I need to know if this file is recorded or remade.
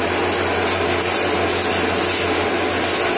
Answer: recorded